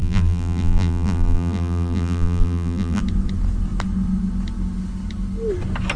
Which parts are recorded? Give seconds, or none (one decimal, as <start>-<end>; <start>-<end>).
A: 3.0-6.0